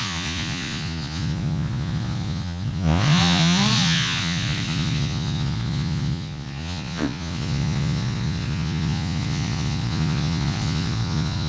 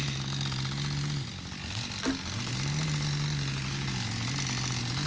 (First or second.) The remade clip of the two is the first